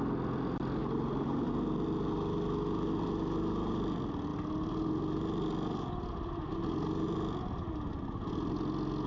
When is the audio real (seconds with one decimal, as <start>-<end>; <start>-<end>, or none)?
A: 0.0-0.8; 1.5-9.1